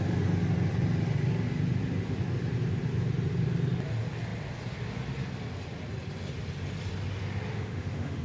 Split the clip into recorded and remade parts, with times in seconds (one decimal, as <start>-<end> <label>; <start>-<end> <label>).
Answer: 0.0-7.5 recorded; 7.5-8.2 remade